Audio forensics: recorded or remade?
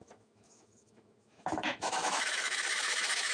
remade